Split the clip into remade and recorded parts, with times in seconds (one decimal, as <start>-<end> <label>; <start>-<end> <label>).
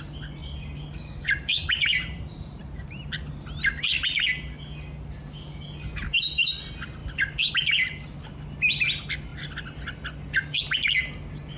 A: 0.0-0.4 recorded; 0.4-3.3 remade; 3.3-11.6 recorded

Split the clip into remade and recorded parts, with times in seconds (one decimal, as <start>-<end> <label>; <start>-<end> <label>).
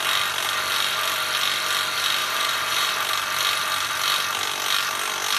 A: 0.0-2.2 recorded; 2.2-2.9 remade; 2.9-5.4 recorded